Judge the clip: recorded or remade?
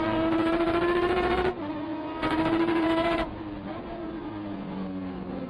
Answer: remade